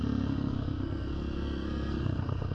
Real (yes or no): no